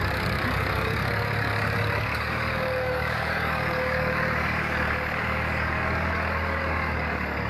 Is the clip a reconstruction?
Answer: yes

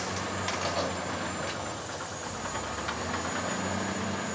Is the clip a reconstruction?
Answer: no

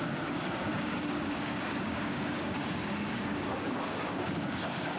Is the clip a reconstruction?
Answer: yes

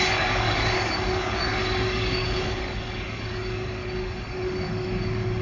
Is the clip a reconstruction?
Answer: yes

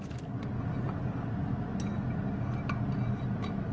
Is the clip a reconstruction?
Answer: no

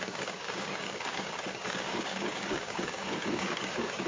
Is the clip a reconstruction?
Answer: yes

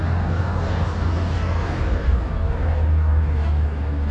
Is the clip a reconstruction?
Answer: yes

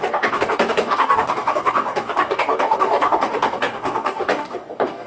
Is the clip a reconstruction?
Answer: yes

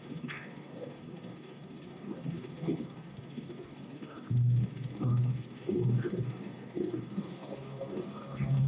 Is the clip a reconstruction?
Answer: yes